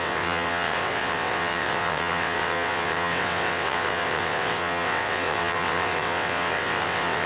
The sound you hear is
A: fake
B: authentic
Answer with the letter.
A